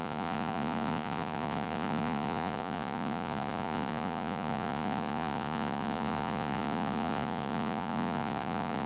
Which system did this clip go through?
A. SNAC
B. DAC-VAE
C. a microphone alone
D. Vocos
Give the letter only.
D